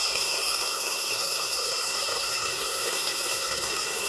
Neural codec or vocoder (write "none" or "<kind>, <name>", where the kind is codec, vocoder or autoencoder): codec, SNAC